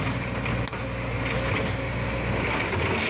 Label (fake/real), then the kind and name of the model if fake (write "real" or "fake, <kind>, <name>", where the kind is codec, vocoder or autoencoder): real